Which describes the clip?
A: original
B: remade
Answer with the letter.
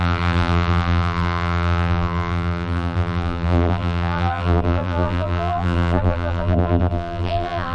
B